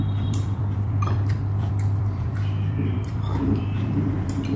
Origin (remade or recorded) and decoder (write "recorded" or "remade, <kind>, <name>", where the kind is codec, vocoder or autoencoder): remade, vocoder, BigVGAN v2